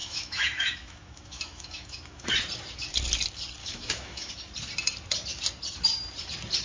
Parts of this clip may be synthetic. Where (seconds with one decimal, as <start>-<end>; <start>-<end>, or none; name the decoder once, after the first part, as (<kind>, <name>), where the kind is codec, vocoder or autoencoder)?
0.0-2.3 (autoencoder, DAC-VAE); 3.6-4.3

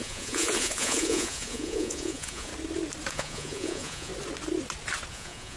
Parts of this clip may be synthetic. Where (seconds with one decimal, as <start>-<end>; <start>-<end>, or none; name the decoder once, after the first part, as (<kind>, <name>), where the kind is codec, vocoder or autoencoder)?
0.0-2.5 (vocoder, Vocos); 3.1-4.1; 5.1-5.6

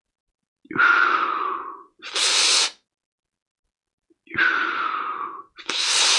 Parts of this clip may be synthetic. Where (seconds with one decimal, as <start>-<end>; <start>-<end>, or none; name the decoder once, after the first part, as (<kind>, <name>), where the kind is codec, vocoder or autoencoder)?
none

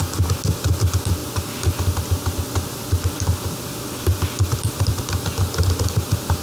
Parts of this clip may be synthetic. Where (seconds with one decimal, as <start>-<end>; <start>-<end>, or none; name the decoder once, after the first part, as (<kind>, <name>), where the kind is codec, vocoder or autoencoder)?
1.2-5.0 (vocoder, BigVGAN v2)

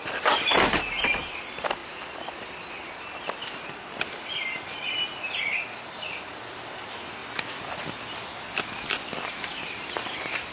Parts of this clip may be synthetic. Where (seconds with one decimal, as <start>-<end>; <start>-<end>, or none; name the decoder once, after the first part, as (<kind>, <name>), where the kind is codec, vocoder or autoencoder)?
1.8-2.3 (vocoder, BigVGAN v2)

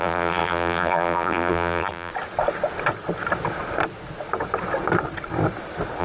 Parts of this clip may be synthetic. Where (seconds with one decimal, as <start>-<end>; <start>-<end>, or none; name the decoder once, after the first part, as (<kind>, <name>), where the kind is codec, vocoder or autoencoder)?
0.0-2.1 (vocoder, BigVGAN v2)